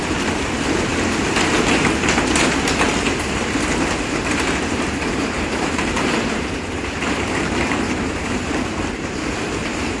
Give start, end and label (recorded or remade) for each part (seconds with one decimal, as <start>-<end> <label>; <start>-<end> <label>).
0.0-0.9 remade; 0.9-2.9 recorded; 2.9-10.0 remade